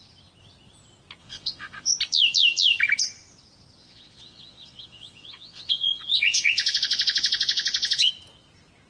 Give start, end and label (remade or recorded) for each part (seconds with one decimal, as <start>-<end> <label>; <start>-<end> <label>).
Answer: 0.0-1.2 recorded; 1.2-1.9 remade; 1.9-3.8 recorded; 3.8-8.1 remade; 8.1-8.9 recorded